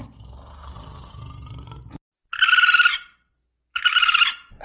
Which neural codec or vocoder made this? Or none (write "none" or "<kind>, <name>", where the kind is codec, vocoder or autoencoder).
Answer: none